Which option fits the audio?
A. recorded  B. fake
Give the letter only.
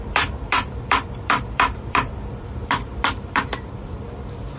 B